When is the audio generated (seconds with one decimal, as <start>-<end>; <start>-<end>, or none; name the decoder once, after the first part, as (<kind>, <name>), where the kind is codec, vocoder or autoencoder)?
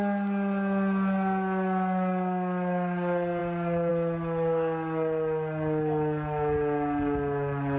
none